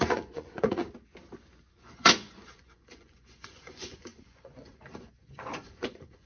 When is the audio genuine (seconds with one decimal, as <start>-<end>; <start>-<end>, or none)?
0.8-1.7